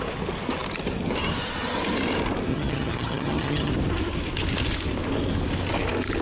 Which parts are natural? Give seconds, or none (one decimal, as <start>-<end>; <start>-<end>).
0.0-2.5; 3.7-6.2